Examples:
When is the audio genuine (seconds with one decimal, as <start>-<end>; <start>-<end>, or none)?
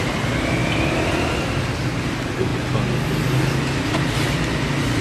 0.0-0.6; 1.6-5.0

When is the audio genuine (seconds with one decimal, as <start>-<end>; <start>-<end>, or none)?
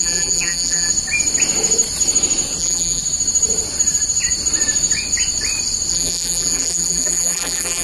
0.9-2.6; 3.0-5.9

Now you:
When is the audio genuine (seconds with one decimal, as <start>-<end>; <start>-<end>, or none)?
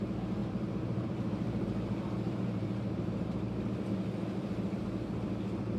0.0-0.4; 3.9-5.8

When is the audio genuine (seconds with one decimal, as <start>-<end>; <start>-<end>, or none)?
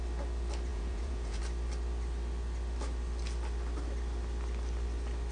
0.0-0.7; 1.4-5.3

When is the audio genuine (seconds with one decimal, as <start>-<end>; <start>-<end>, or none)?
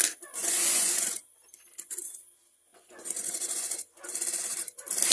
0.0-0.4; 1.2-2.7; 4.1-5.1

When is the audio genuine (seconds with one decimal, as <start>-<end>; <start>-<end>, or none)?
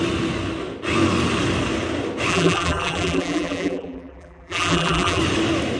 0.0-2.3; 5.2-5.8